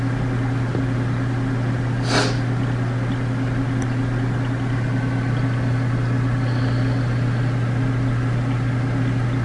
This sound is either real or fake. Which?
real